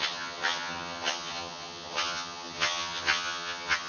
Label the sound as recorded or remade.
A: remade